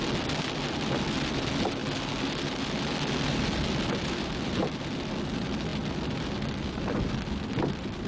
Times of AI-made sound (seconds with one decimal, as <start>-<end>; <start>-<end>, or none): none